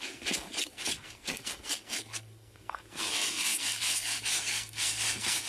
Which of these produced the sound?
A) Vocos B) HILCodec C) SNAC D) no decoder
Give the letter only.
C